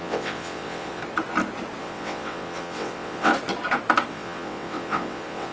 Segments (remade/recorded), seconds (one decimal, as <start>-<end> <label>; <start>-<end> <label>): 0.0-1.0 remade; 1.0-1.8 recorded; 1.8-3.3 remade; 3.3-4.1 recorded; 4.1-5.5 remade